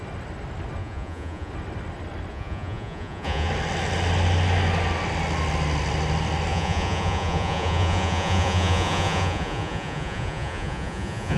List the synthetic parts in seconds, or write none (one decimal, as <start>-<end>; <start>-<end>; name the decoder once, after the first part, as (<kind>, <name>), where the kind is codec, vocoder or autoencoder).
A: 0.8-1.5 (vocoder, Vocos); 2.3-3.5; 6.5-11.4